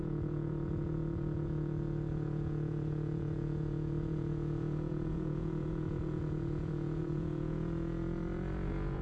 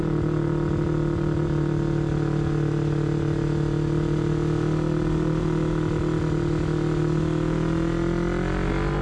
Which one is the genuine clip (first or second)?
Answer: second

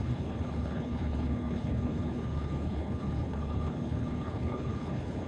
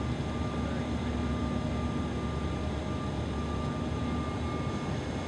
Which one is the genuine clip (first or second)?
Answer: second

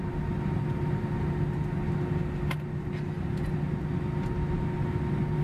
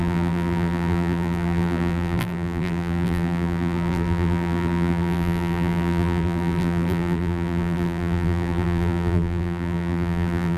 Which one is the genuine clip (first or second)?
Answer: first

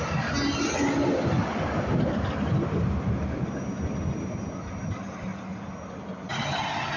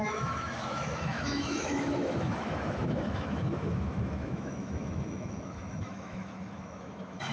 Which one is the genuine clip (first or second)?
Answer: first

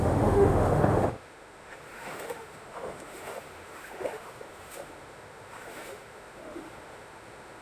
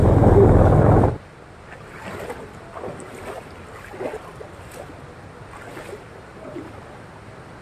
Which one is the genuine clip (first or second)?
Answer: second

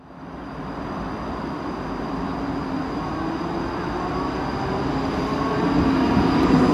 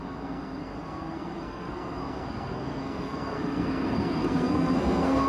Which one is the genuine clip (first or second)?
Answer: first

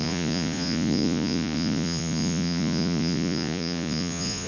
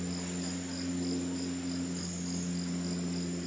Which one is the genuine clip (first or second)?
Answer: second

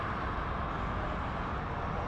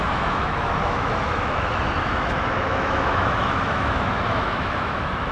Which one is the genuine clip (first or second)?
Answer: first